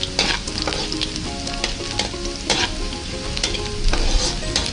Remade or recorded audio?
recorded